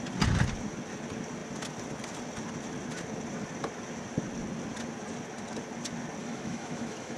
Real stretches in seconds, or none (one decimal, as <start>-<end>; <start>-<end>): 0.0-6.2